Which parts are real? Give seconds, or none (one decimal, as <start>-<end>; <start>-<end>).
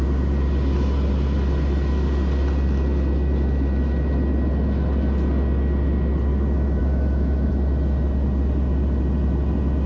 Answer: 0.0-6.8; 7.5-9.9